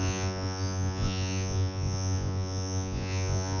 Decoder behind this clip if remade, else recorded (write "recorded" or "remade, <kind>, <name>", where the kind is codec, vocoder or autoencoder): remade, vocoder, Vocos